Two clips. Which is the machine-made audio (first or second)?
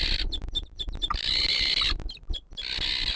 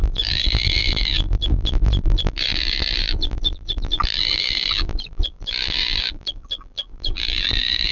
second